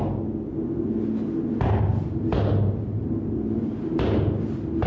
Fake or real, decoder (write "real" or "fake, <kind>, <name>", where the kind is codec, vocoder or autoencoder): real